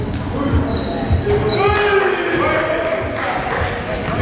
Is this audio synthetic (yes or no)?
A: no